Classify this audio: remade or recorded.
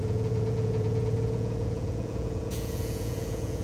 remade